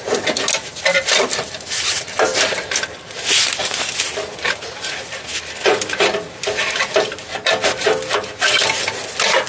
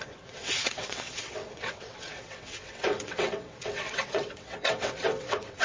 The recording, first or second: first